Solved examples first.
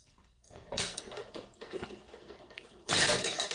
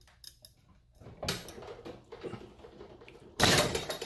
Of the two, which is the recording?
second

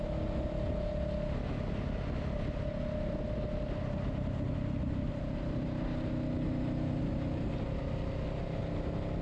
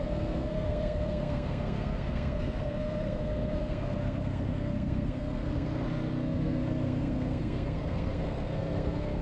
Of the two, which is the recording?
first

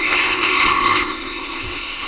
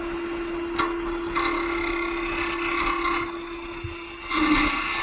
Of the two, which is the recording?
second